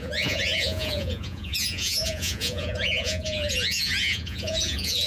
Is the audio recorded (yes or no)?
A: no